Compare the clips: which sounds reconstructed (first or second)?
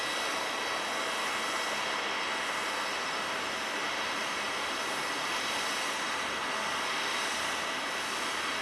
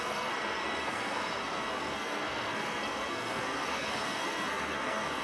second